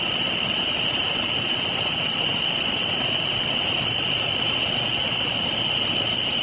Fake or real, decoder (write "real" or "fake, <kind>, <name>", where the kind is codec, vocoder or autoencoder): real